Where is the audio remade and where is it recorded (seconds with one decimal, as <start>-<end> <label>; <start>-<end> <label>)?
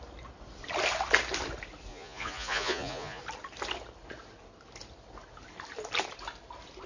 0.0-1.9 recorded; 1.9-3.2 remade; 3.2-6.9 recorded